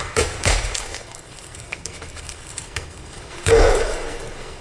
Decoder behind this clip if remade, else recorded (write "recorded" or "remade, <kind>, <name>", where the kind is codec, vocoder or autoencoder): remade, codec, SNAC